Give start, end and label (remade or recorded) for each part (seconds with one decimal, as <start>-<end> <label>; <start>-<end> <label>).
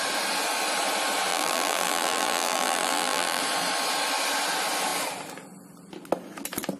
0.0-1.3 recorded; 1.3-3.4 remade; 3.4-6.8 recorded